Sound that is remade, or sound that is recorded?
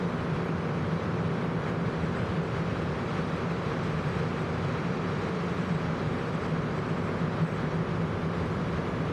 recorded